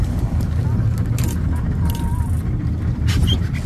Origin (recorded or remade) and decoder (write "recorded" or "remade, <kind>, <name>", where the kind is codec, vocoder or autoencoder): recorded